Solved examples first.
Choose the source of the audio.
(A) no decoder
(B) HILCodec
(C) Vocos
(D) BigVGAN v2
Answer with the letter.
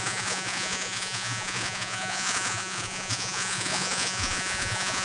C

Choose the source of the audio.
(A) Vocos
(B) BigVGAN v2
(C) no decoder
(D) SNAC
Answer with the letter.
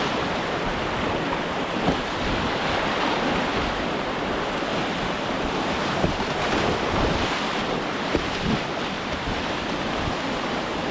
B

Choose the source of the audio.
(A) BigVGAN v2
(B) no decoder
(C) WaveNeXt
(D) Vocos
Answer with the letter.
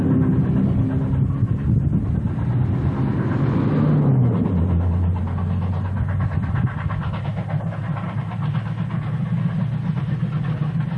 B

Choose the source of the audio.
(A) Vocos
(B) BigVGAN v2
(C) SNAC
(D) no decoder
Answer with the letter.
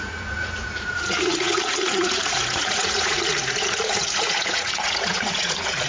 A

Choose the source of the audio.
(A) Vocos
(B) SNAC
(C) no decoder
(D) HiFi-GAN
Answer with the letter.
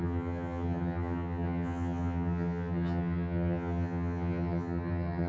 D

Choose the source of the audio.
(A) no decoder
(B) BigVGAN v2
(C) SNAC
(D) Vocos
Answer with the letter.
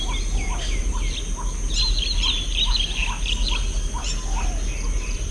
A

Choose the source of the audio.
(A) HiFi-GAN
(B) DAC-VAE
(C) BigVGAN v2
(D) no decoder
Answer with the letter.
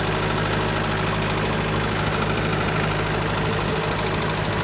D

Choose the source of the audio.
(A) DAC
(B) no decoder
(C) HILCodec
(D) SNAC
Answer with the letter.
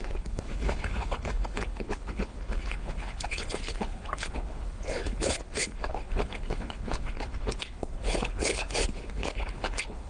C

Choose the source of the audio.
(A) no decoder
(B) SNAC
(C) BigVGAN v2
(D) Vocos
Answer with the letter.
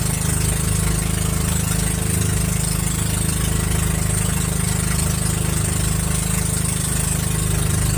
A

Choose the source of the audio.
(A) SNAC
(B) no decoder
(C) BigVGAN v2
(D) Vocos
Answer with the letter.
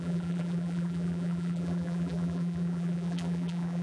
C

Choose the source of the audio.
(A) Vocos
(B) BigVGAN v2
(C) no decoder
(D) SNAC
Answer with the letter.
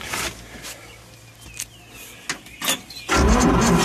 C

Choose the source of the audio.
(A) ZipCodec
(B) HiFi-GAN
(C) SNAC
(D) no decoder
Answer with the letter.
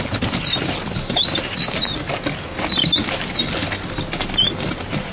D